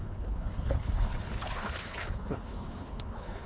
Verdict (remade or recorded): remade